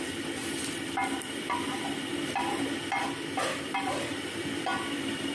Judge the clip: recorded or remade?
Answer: remade